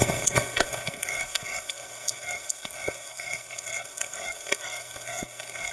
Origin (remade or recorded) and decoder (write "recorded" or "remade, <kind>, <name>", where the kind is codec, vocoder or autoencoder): remade, codec, SNAC